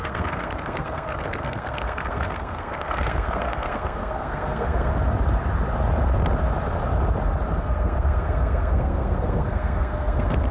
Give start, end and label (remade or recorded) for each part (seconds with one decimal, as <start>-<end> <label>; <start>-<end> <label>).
0.0-4.9 remade; 4.9-7.6 recorded; 7.6-10.5 remade